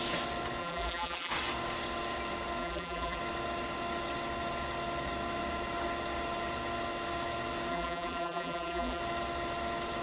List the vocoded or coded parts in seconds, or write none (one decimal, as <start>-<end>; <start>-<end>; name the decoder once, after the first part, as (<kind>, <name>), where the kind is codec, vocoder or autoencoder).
0.6-1.3 (vocoder, BigVGAN v2); 2.6-3.2; 7.7-9.0